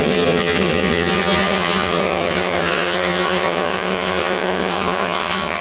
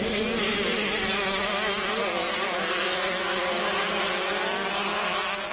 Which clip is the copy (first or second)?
first